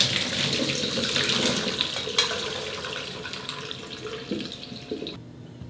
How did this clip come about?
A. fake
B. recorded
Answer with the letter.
B